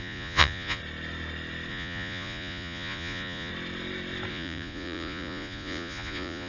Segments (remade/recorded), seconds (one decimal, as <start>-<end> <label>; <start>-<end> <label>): 0.0-0.8 remade; 0.8-1.7 recorded; 1.7-3.5 remade; 3.5-4.3 recorded; 4.3-6.5 remade